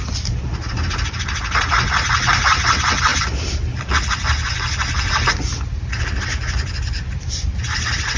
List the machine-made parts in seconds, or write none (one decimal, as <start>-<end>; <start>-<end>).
none